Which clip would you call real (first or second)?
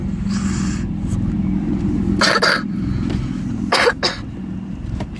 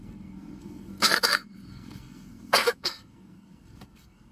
first